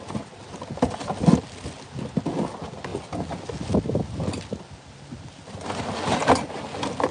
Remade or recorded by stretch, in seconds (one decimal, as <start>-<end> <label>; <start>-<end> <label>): 0.0-7.1 recorded